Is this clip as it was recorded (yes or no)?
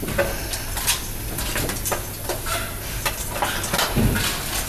yes